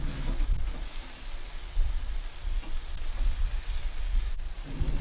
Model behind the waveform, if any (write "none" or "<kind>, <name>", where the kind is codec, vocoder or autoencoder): none